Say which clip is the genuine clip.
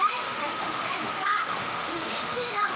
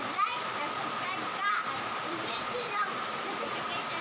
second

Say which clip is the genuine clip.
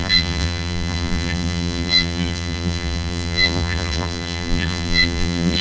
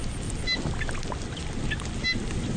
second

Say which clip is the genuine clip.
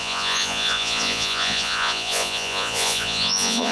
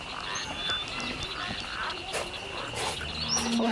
second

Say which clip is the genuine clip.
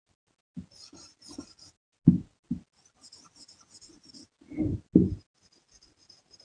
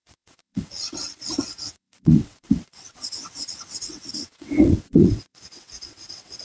first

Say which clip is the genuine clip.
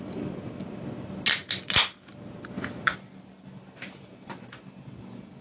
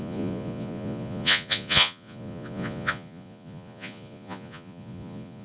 first